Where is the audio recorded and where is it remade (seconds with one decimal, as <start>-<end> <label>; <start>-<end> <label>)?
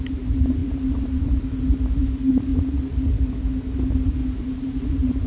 0.0-0.6 recorded; 0.6-1.4 remade; 1.4-4.2 recorded; 4.2-5.3 remade